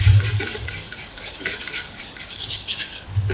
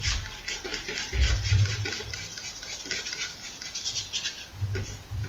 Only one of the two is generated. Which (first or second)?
first